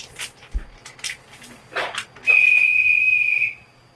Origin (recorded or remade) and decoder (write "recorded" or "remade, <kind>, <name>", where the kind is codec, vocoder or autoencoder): recorded